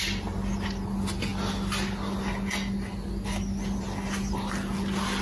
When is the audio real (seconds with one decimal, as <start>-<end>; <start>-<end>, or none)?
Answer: 0.0-5.2